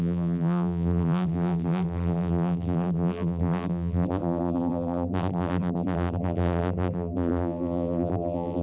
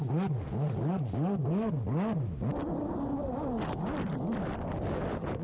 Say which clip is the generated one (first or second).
first